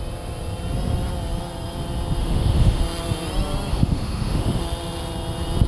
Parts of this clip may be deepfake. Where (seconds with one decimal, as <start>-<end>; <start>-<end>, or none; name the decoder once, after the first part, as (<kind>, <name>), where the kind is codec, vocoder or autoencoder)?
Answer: 2.2-2.8 (autoencoder, DAC-VAE); 3.7-4.6